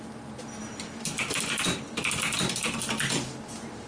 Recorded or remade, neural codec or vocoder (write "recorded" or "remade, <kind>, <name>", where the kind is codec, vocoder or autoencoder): recorded